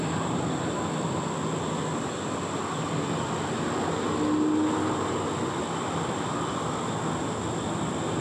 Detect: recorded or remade recorded